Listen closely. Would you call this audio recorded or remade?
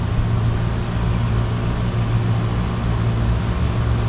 recorded